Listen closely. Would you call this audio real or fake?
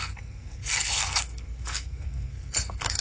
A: fake